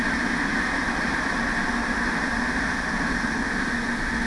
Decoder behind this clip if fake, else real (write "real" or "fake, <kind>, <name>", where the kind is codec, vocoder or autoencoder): real